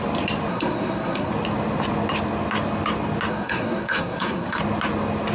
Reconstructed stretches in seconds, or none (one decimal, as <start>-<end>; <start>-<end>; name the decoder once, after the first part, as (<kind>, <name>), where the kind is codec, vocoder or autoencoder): 0.5-1.3 (codec, SNAC); 3.3-4.6